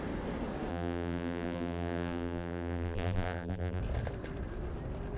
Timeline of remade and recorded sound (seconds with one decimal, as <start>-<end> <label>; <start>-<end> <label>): 0.0-0.7 recorded; 0.7-3.8 remade; 3.8-5.2 recorded